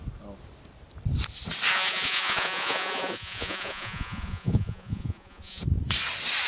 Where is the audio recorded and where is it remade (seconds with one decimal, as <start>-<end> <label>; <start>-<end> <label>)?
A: 0.0-1.7 recorded; 1.7-5.6 remade; 5.6-6.5 recorded